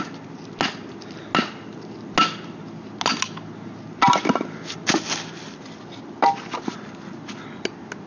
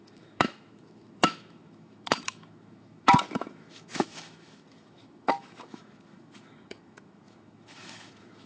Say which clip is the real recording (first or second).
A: first